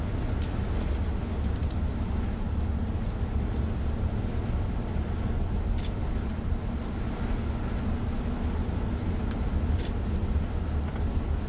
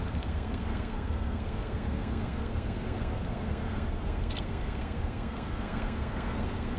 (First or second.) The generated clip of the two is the second